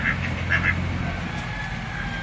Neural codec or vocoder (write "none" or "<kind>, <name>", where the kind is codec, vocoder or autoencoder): none